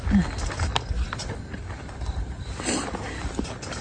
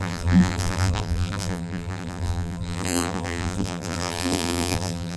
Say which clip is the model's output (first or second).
second